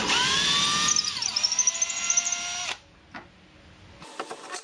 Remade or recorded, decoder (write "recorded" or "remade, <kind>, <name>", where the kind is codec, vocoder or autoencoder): recorded